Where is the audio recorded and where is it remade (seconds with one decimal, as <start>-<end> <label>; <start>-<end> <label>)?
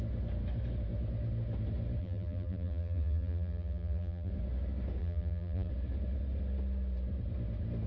0.0-2.0 recorded; 2.0-4.3 remade; 4.3-5.0 recorded; 5.0-5.7 remade; 5.7-7.9 recorded